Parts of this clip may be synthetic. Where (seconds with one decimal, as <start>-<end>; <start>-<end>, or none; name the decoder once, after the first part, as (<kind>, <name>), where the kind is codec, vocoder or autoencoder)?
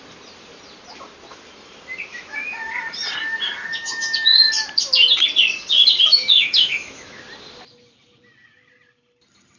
2.1-2.7 (autoencoder, DAC-VAE); 3.8-4.5; 6.1-7.2